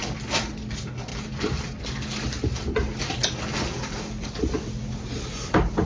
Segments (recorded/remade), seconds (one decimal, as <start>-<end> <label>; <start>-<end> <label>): 0.0-5.9 recorded